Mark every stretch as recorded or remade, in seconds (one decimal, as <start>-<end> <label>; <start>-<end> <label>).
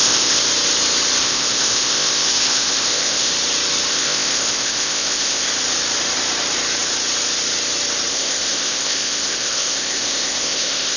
0.0-0.4 remade; 0.4-1.2 recorded; 1.2-3.3 remade; 3.3-3.9 recorded; 3.9-5.5 remade; 5.5-8.1 recorded; 8.1-11.0 remade